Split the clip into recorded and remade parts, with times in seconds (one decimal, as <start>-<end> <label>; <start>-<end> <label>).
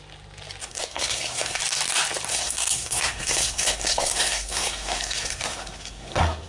0.0-0.6 recorded; 0.6-1.6 remade; 1.6-2.3 recorded; 2.3-6.5 remade